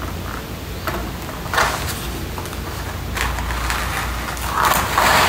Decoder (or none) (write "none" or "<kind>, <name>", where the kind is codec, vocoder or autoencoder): none